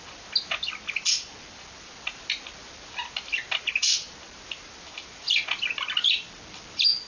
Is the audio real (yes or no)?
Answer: yes